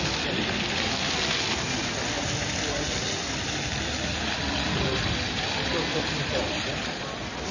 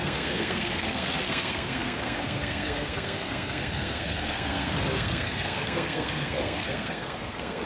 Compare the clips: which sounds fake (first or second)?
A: second